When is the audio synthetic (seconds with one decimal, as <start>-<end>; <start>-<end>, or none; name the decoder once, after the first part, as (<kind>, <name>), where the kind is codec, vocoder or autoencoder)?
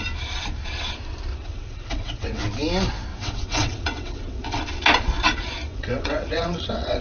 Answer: 1.3-2.4 (vocoder, WaveNeXt); 3.1-4.6; 5.7-7.0